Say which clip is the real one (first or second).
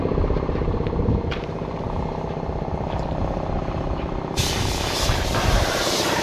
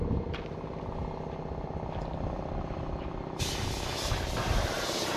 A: second